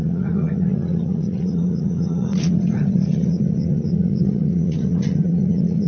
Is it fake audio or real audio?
fake